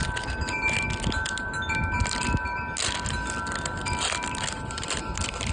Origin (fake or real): real